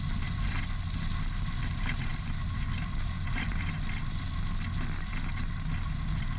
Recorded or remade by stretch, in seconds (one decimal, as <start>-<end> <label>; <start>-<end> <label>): 0.0-6.4 recorded